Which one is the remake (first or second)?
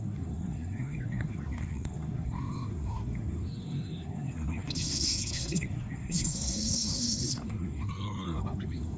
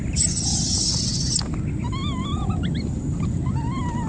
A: first